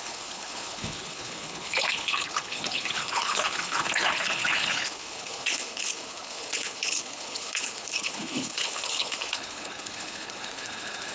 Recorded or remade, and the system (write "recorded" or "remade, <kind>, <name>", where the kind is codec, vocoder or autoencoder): remade, codec, HILCodec